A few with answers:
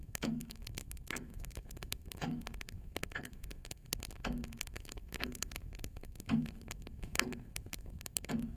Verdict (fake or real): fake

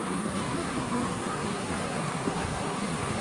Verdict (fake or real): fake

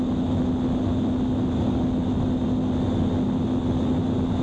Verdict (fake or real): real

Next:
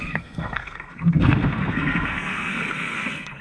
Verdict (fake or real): fake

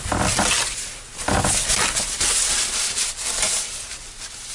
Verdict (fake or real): real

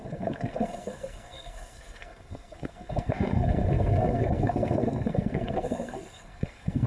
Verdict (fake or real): fake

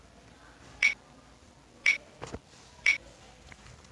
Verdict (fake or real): real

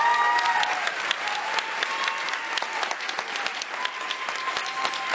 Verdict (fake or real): real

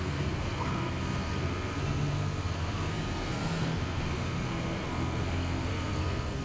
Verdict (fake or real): fake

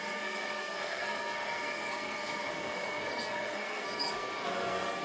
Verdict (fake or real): fake